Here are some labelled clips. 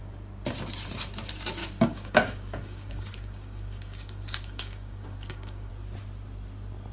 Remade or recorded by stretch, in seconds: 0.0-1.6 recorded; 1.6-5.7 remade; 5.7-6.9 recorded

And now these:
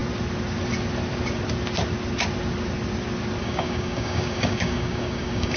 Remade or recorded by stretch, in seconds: 0.0-3.4 recorded; 3.4-5.6 remade

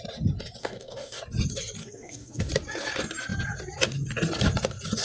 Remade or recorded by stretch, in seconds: 0.0-0.6 recorded; 0.6-1.2 remade; 1.2-1.8 recorded; 1.8-2.5 remade; 2.5-5.0 recorded